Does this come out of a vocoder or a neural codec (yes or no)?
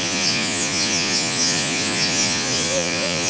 yes